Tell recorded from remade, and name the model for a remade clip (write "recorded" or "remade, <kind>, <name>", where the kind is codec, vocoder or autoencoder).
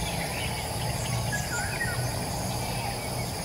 recorded